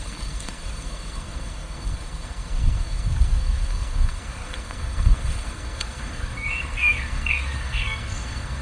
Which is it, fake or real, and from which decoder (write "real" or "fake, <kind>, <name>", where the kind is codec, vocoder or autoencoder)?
fake, codec, SNAC